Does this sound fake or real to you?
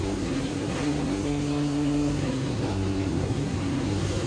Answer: fake